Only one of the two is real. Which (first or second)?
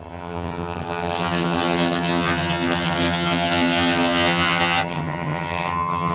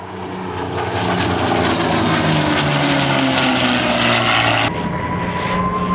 second